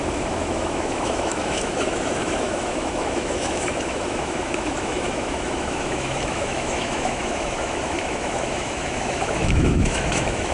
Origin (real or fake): fake